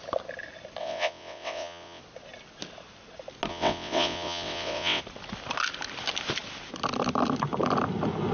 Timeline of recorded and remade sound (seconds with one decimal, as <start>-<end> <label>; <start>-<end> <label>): 0.0-0.8 recorded; 0.8-2.0 remade; 2.0-3.5 recorded; 3.5-5.0 remade; 5.0-8.3 recorded